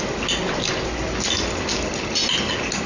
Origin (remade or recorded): recorded